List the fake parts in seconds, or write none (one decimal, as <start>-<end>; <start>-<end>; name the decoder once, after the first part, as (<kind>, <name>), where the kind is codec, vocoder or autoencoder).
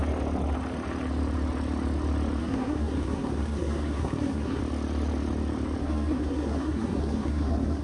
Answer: 2.4-4.6 (codec, SNAC); 5.8-7.8